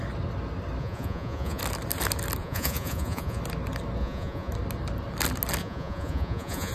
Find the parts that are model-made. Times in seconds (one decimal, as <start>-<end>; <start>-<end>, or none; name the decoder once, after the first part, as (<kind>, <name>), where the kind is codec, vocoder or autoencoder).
0.8-1.6 (vocoder, Vocos); 2.4-3.4; 4.0-4.5; 5.6-6.7